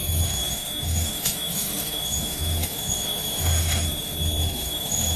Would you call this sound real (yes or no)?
no